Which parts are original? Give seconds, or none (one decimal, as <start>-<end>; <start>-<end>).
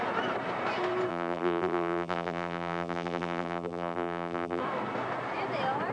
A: 0.0-1.1; 4.6-5.9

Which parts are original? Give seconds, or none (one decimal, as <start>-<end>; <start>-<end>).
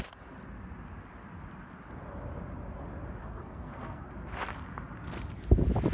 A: 0.0-3.2; 4.1-5.9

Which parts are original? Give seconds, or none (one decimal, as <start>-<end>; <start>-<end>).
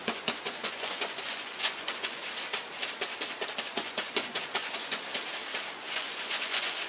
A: 2.2-3.6; 5.1-5.7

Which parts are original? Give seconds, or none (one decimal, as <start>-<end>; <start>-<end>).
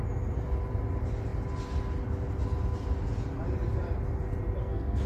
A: 0.0-4.6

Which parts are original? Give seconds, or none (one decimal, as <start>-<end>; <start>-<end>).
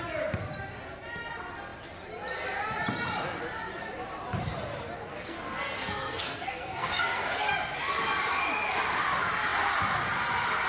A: 0.0-5.1; 7.5-10.7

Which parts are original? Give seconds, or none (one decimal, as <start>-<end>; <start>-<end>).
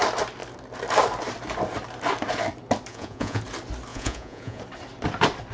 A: 0.0-2.9; 3.4-3.9; 4.6-5.5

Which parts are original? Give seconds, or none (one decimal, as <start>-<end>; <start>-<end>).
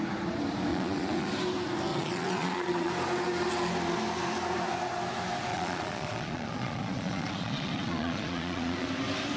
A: 0.0-0.7; 1.3-1.9; 2.9-5.5; 8.9-9.4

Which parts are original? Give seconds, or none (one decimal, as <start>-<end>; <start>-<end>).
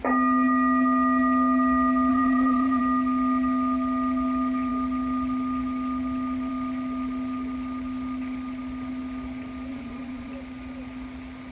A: 0.0-2.1; 2.8-9.7; 10.3-11.5